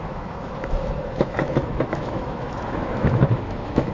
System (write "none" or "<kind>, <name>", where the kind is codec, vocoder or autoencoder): autoencoder, DAC-VAE